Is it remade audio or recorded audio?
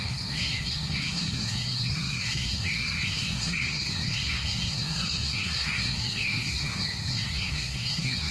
remade